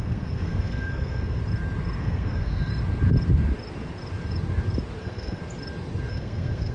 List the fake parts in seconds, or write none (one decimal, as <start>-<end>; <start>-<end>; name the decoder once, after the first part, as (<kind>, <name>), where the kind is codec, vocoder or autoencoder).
0.0-1.4 (codec, SNAC); 2.0-2.7; 5.0-5.4; 6.1-6.7